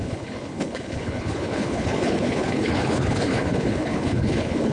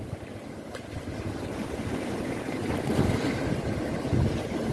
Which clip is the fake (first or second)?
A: first